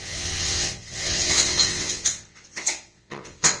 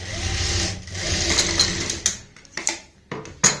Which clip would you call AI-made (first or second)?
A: first